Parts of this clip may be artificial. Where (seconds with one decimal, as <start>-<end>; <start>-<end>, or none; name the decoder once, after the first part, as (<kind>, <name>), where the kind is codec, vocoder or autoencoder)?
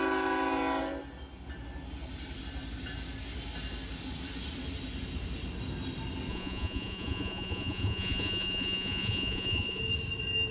6.3-9.8 (vocoder, Vocos)